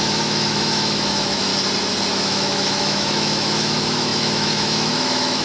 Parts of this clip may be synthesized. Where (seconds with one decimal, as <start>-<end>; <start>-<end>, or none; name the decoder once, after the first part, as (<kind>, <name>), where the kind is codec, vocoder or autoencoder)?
0.0-1.5 (autoencoder, DAC-VAE); 2.1-5.4